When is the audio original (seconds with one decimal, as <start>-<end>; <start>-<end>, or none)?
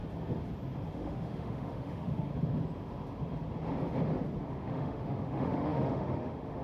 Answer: 0.0-0.9; 2.3-4.5